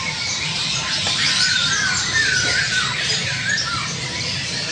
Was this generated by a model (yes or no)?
yes